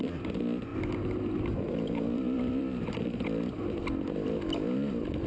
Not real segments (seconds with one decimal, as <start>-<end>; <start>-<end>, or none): 0.7-3.5